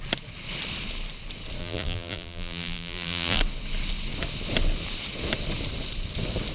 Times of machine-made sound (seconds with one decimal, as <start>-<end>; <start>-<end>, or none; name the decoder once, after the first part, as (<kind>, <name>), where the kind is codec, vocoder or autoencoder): 1.6-3.4 (vocoder, BigVGAN v2)